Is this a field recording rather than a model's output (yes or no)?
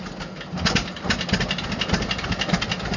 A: yes